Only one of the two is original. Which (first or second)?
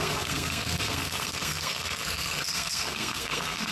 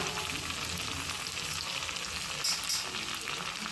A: second